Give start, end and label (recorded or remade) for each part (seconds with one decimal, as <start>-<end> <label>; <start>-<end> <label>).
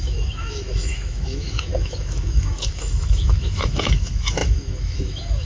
0.0-5.4 remade